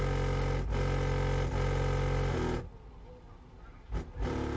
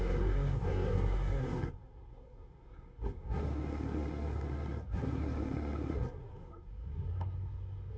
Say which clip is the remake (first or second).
second